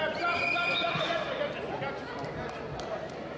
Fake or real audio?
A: real